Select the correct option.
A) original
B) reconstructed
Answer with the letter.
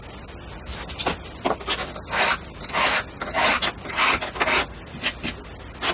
A